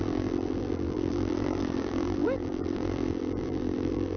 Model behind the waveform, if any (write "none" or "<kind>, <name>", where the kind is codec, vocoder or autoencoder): vocoder, BigVGAN v2